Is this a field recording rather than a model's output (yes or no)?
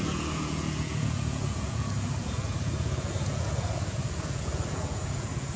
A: no